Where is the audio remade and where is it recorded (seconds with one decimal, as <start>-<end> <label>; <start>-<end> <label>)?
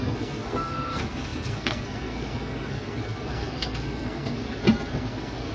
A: 0.0-5.5 remade